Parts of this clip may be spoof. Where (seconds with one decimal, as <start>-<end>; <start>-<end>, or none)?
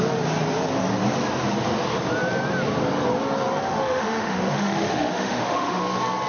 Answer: 3.7-5.8